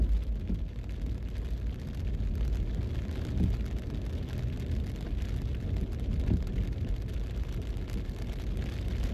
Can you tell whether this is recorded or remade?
recorded